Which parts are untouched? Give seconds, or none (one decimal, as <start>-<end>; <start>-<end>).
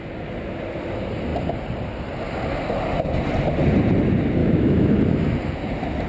0.0-4.4; 5.0-6.1